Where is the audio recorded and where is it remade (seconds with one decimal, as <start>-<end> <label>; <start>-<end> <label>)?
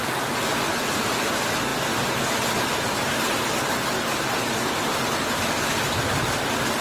0.0-6.8 recorded